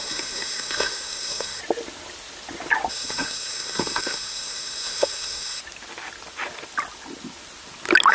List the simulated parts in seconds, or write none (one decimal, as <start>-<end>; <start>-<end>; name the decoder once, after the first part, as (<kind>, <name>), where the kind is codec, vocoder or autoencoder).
0.0-1.6 (codec, SNAC); 2.9-5.6